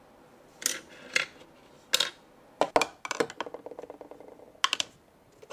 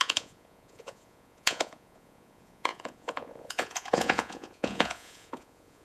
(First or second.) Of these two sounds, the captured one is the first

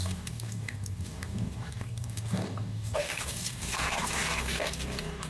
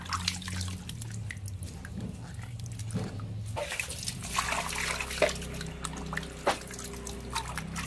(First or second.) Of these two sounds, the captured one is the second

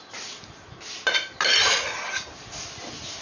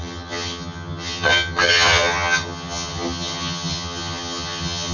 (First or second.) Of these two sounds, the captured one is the first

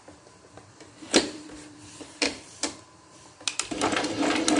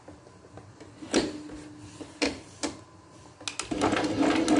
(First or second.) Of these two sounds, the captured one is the second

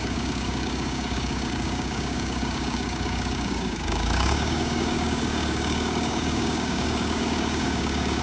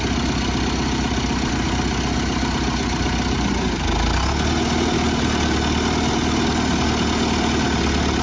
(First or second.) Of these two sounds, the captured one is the second